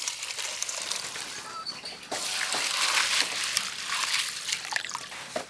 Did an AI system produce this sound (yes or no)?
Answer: no